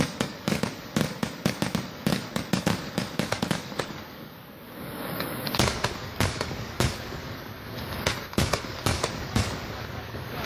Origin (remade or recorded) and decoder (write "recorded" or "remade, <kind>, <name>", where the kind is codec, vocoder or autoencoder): remade, codec, DAC